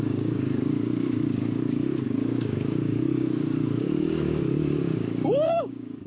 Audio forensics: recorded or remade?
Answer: remade